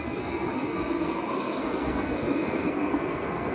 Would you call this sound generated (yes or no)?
yes